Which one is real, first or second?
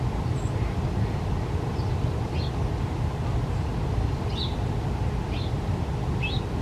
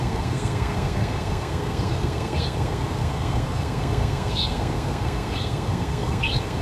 first